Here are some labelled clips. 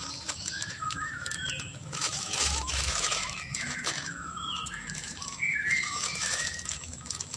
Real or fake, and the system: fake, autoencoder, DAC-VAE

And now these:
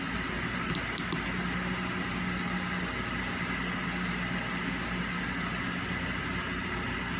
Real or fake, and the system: real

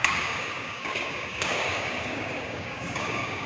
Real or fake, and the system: fake, codec, DAC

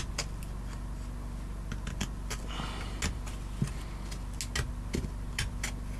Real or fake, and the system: real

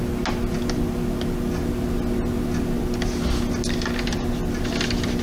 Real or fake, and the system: real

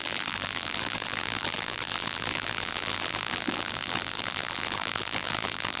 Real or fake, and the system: fake, vocoder, BigVGAN v2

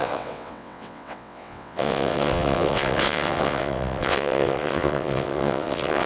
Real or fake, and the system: fake, vocoder, WaveNeXt